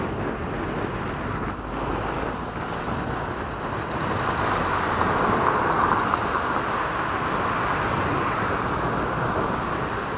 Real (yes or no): yes